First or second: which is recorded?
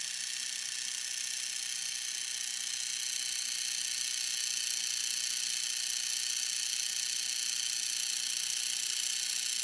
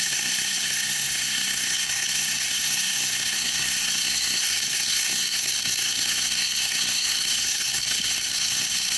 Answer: first